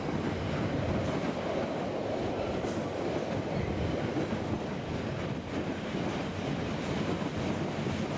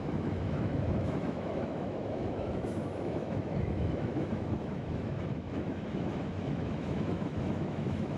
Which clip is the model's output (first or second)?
second